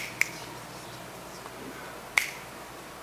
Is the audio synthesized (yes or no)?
no